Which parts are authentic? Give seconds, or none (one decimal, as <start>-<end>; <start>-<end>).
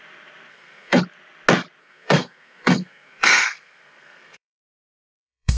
0.0-0.5; 1.0-1.8